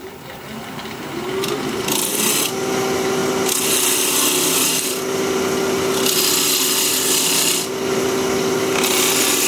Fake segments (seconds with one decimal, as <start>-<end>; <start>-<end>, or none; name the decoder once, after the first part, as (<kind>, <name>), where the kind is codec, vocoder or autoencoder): none